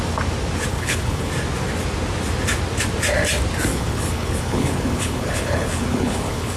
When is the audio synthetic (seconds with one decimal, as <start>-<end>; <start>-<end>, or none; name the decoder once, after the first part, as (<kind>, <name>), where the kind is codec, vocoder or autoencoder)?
0.7-1.3 (codec, HILCodec); 3.7-6.6